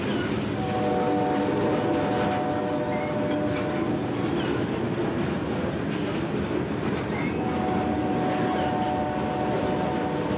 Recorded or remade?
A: recorded